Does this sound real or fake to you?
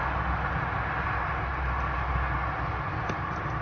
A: real